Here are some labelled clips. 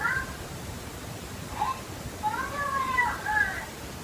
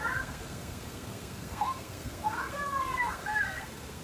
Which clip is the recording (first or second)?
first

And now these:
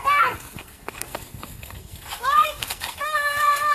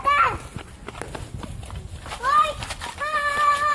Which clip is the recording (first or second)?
second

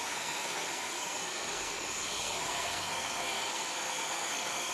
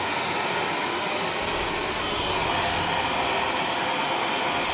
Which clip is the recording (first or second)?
second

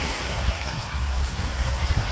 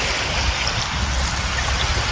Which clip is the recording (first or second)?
second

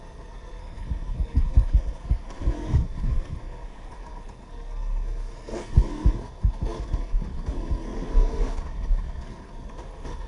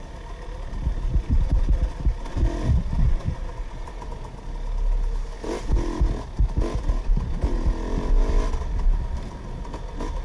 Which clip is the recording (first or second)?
second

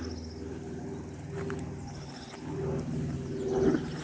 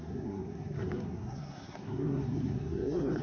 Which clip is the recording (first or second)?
first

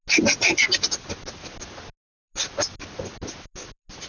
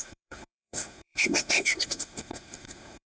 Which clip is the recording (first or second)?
first